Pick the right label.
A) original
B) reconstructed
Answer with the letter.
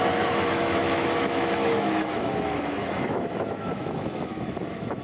B